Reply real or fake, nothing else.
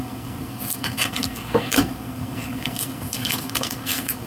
fake